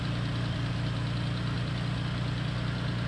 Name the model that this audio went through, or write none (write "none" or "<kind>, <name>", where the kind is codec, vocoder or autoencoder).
none